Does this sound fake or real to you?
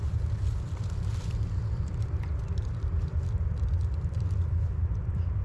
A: fake